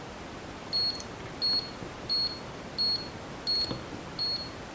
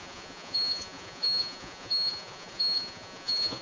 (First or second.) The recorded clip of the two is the first